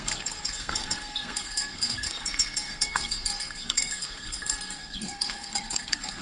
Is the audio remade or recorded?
remade